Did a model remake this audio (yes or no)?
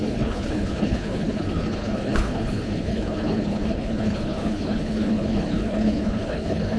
yes